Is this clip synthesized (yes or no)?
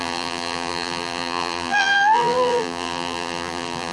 yes